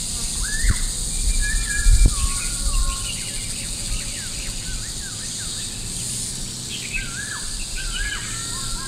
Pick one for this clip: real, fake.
real